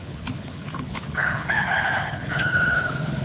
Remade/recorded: remade